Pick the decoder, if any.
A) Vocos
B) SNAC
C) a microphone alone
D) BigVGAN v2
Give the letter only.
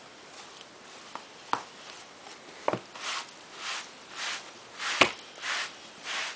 C